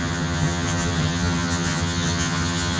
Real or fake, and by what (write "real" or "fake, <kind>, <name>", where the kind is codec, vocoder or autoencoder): fake, vocoder, HiFi-GAN